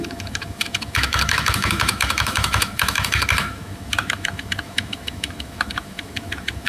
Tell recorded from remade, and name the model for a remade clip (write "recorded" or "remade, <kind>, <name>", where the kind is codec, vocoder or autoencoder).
remade, autoencoder, DAC-VAE